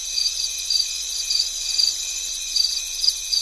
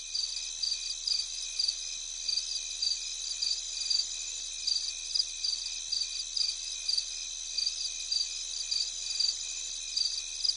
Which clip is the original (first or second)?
second